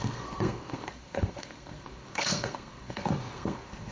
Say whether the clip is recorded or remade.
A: remade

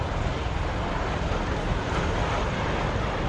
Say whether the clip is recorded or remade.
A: recorded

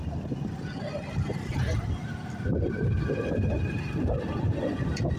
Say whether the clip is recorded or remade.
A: recorded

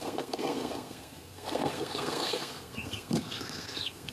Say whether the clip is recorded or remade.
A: remade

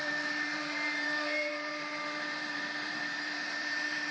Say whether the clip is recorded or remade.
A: remade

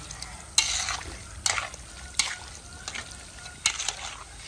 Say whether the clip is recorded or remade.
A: recorded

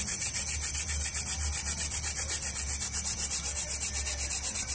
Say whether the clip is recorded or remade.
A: recorded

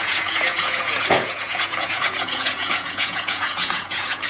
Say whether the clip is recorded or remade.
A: remade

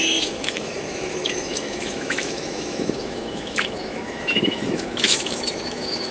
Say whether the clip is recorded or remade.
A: remade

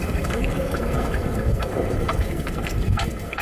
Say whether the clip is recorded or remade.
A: remade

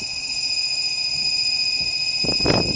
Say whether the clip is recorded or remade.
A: recorded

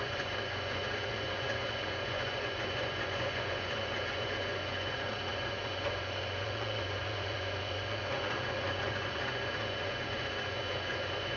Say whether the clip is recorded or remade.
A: remade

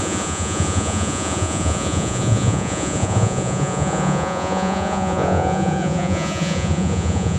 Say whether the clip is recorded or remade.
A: remade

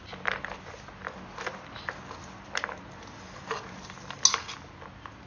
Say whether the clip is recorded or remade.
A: recorded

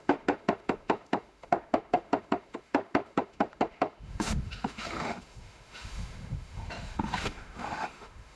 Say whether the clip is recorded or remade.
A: remade